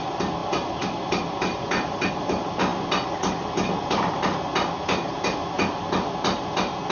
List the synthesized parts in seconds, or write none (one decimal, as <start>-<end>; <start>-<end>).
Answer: none